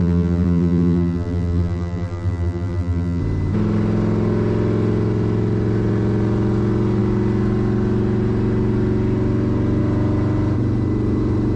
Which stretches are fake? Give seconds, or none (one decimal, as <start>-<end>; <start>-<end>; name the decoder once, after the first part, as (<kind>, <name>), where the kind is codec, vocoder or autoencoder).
0.0-3.2 (vocoder, BigVGAN v2)